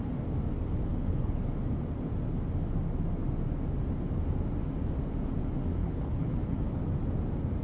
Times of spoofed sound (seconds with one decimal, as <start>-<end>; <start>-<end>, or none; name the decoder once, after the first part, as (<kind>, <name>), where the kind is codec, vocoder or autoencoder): 0.9-1.4 (codec, HILCodec); 5.8-6.9